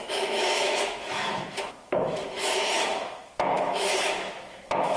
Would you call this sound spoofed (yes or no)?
yes